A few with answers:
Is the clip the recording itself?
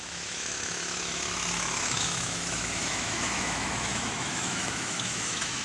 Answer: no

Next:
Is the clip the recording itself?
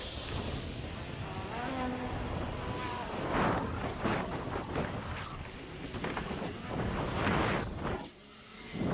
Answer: yes